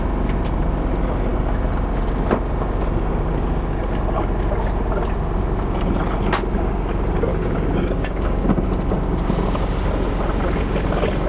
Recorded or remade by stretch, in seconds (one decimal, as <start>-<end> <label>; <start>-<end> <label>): 0.0-7.3 recorded; 7.3-8.5 remade; 8.5-11.3 recorded